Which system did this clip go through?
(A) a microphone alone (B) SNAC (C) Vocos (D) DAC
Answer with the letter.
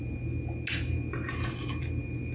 A